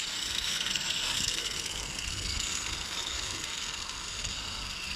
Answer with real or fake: fake